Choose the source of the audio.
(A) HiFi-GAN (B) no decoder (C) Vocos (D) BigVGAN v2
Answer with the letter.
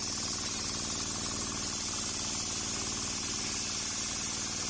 B